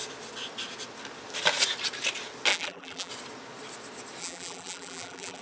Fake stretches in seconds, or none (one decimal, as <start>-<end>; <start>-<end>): 2.5-3.1; 4.2-5.4

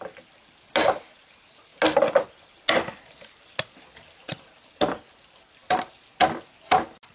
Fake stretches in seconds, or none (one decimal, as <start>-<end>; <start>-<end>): none

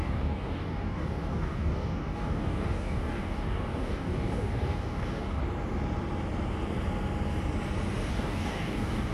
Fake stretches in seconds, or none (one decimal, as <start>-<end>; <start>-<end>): 0.0-5.4; 8.1-9.1

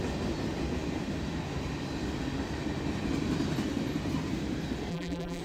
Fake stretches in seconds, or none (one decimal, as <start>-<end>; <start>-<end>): 4.9-5.4

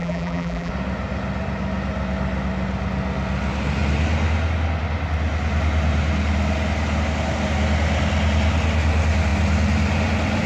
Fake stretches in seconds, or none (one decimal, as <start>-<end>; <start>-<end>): 0.0-0.7

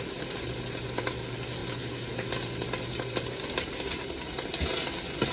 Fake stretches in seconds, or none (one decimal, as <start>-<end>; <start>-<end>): none